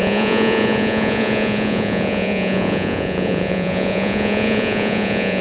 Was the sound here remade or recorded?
remade